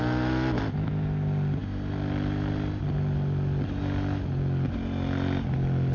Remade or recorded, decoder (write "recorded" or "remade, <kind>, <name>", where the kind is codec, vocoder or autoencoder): recorded